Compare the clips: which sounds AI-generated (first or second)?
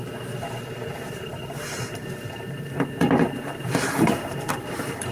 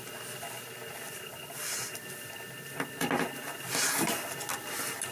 first